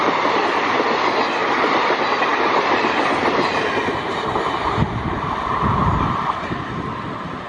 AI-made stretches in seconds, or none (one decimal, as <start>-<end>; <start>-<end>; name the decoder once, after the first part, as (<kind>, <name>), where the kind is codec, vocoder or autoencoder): 0.0-0.6 (vocoder, BigVGAN v2); 1.4-1.9; 2.3-6.6